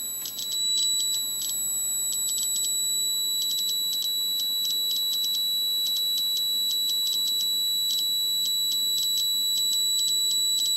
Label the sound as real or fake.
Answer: real